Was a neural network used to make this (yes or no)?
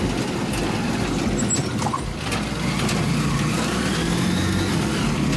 no